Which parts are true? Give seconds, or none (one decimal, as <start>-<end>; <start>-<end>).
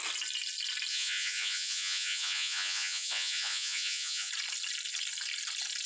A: 0.0-0.9; 4.3-5.9